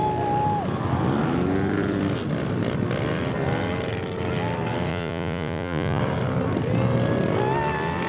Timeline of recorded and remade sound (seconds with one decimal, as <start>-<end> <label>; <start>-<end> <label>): 0.0-4.9 recorded; 4.9-6.0 remade; 6.0-8.1 recorded